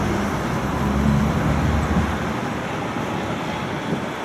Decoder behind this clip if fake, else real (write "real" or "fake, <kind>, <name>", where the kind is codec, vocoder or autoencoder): real